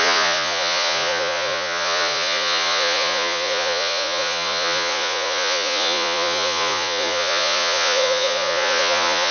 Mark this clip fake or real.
fake